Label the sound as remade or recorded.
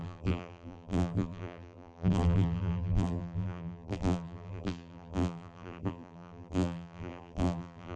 remade